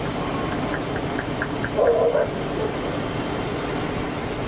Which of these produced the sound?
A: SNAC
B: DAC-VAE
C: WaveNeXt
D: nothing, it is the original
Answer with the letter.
D